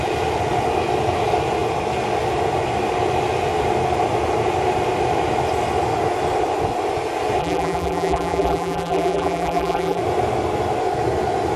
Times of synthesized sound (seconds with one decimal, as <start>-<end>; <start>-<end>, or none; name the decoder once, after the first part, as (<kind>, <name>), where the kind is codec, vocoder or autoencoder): 7.4-10.0 (vocoder, BigVGAN v2)